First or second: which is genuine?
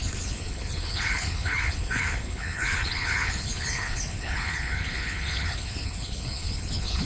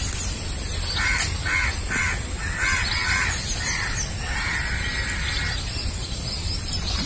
second